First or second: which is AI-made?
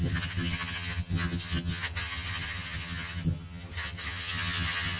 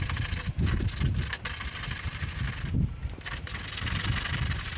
first